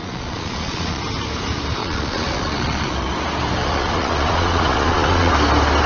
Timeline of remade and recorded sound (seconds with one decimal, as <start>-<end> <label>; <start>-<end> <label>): 0.0-1.0 remade; 1.0-1.8 recorded; 1.8-3.1 remade; 3.1-3.6 recorded; 3.6-5.3 remade; 5.3-5.9 recorded